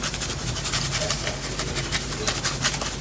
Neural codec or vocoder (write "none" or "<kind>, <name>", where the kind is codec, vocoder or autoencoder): none